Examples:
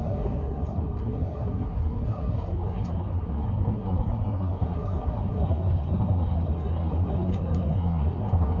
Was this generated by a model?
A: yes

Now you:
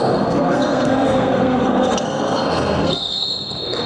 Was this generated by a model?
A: yes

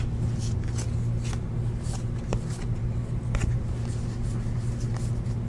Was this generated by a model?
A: no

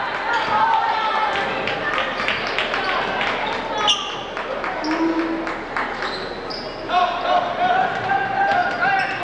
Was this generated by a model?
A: no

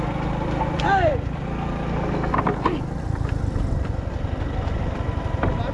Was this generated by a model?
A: no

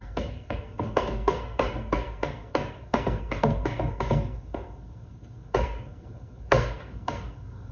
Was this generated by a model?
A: yes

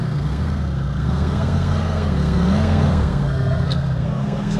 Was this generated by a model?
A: yes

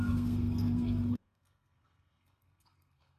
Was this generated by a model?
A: yes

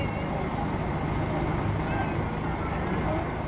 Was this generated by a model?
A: no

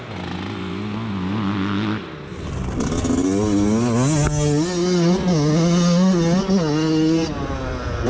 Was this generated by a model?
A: no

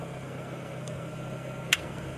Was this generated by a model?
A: yes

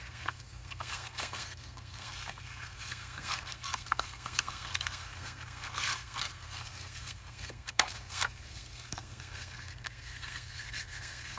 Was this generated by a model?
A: yes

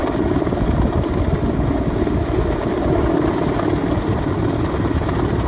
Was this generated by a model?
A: no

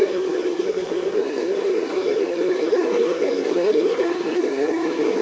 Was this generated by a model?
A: yes